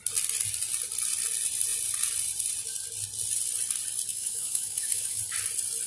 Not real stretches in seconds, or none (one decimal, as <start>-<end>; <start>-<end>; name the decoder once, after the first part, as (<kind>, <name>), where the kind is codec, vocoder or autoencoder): 4.1-5.2 (autoencoder, DAC-VAE)